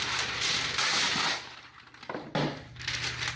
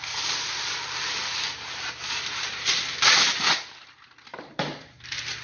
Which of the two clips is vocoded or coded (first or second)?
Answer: second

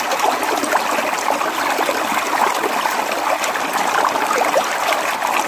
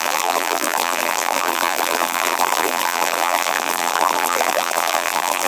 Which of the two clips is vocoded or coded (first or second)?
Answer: second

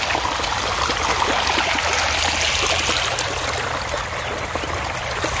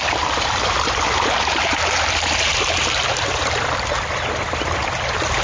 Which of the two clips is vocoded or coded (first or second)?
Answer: second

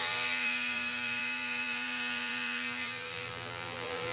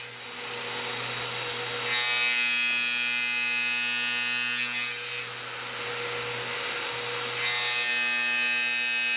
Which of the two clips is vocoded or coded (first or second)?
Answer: first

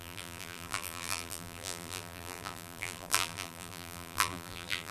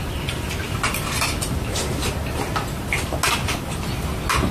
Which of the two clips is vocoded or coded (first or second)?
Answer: first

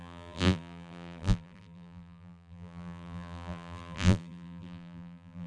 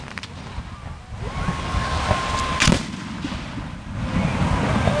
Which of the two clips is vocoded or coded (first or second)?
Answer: first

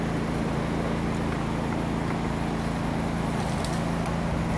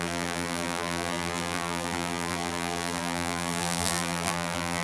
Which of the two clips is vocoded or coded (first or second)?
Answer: second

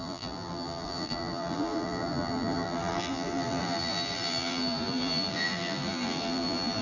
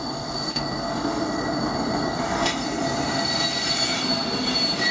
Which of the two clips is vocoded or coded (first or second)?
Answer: first